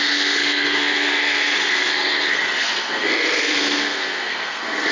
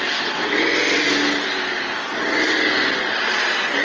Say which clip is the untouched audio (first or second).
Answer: second